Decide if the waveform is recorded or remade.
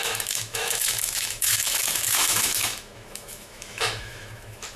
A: remade